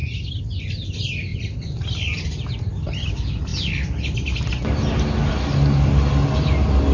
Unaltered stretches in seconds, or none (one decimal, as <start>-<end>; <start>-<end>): 0.0-6.9